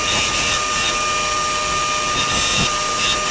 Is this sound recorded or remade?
recorded